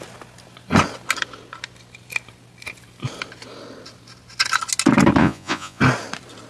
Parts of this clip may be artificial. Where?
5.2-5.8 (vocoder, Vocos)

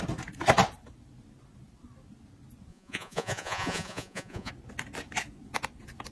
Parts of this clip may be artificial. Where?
2.7-4.5 (vocoder, Vocos)

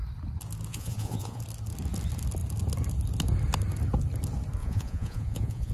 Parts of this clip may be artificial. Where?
0.7-1.4 (vocoder, Vocos); 4.6-5.7

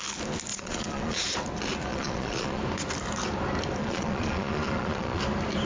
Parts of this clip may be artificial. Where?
0.5-1.2 (vocoder, Vocos); 1.9-2.6; 3.8-5.2

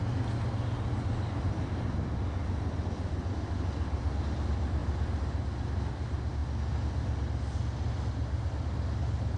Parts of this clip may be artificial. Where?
none